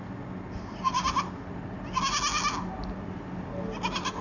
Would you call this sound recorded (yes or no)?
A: yes